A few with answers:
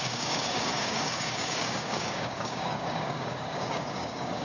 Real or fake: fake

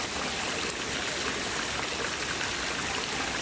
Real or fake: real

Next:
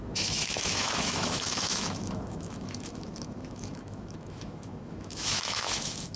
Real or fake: fake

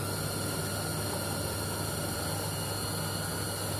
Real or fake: real